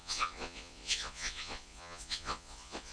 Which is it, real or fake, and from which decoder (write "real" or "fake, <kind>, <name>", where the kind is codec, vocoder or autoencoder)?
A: fake, vocoder, Vocos